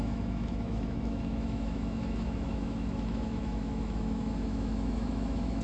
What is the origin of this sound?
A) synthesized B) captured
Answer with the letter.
A